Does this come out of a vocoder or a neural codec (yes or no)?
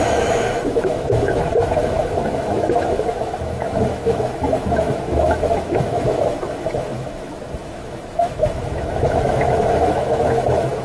yes